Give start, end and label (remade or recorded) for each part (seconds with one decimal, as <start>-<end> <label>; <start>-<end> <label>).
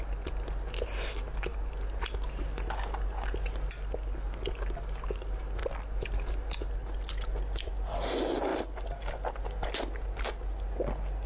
0.0-11.3 recorded